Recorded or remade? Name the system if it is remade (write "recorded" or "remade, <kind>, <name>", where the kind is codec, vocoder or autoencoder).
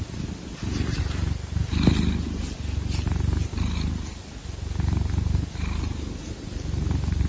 recorded